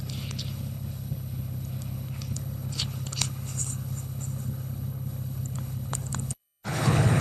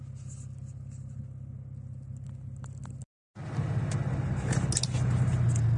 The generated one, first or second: first